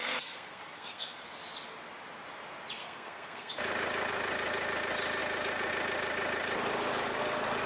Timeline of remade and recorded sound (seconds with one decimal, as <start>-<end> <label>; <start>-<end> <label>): 0.0-1.2 remade; 1.2-2.8 recorded; 2.8-3.5 remade; 3.5-7.7 recorded